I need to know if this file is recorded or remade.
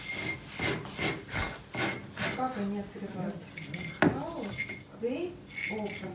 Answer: recorded